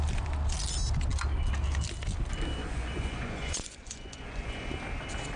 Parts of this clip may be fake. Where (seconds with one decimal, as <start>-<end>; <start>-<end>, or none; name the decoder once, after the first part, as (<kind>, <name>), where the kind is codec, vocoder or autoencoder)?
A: 2.6-4.7 (vocoder, Vocos)

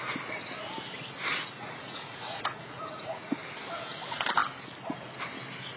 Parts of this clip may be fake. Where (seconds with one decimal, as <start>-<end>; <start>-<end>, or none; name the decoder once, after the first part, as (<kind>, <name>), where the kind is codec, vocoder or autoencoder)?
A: 1.3-3.3 (vocoder, Vocos)

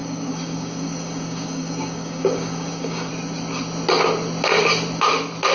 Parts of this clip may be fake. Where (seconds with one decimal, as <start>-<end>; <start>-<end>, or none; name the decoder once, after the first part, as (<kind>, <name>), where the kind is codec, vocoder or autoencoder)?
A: 0.0-3.1 (codec, DAC)

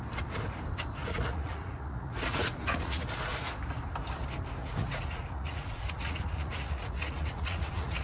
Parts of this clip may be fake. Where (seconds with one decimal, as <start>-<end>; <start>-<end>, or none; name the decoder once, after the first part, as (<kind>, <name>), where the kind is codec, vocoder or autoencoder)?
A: 1.0-3.0 (vocoder, Vocos); 4.6-8.0

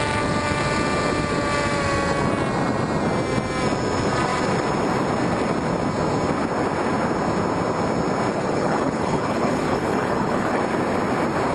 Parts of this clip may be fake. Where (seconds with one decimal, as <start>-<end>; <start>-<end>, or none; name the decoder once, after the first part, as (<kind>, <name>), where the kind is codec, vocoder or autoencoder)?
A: 8.3-10.6 (codec, HILCodec)

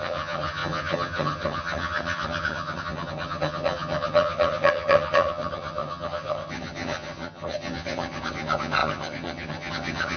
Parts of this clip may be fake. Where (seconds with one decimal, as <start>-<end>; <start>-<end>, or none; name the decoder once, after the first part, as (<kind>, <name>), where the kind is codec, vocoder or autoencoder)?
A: 0.0-10.2 (vocoder, HiFi-GAN)

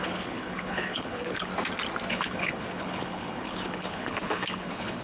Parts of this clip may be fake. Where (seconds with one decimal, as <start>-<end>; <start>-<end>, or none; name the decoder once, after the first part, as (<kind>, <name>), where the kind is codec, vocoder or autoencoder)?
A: 0.0-1.5 (codec, HILCodec); 2.1-5.0